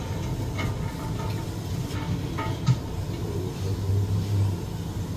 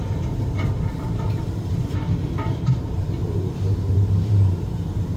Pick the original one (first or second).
first